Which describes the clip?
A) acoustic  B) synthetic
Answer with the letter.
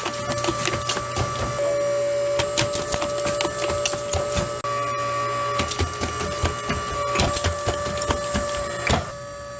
A